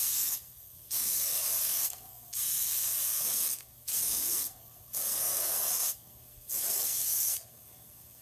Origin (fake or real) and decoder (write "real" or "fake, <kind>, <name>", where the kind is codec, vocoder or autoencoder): fake, codec, SNAC